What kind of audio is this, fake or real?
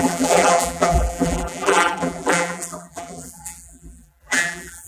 fake